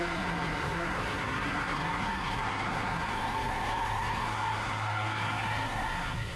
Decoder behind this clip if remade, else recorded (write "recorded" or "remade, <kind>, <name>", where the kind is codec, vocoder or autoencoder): remade, codec, SNAC